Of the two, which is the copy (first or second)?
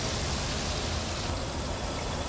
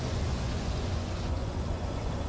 second